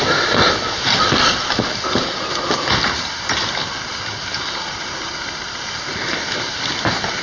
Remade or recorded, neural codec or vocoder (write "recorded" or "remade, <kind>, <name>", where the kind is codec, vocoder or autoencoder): recorded